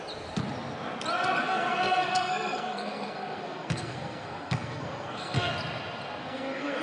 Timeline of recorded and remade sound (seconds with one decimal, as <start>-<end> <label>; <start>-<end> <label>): 0.0-1.4 recorded; 1.4-5.5 remade; 5.5-6.2 recorded; 6.2-6.8 remade